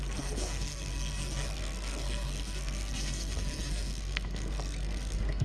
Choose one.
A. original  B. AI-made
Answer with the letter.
B